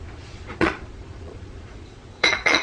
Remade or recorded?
remade